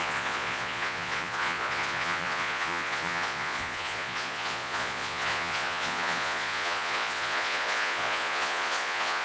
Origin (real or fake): fake